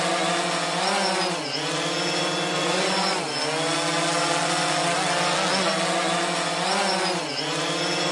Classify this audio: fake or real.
real